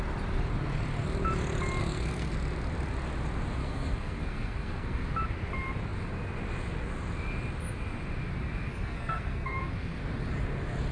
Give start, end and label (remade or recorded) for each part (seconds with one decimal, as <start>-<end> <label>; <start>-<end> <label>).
0.0-1.8 recorded; 1.8-2.3 remade; 2.3-3.6 recorded; 3.6-5.1 remade; 5.1-8.7 recorded; 8.7-10.0 remade; 10.0-10.9 recorded